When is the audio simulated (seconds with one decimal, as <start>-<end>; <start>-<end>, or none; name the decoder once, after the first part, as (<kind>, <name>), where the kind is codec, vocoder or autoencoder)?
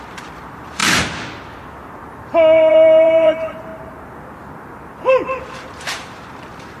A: 0.0-0.8 (vocoder, BigVGAN v2); 2.7-3.7; 5.4-6.8